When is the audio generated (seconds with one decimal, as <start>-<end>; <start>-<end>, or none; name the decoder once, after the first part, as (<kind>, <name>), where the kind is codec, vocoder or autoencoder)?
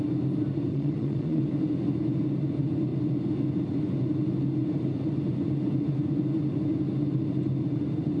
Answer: 0.7-1.4 (vocoder, Vocos)